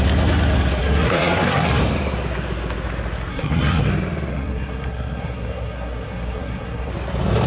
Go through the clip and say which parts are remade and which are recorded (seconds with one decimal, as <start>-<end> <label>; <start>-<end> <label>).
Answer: 0.0-0.8 recorded; 0.8-1.8 remade; 1.8-3.3 recorded; 3.3-3.9 remade; 3.9-4.3 recorded; 4.3-6.9 remade; 6.9-7.5 recorded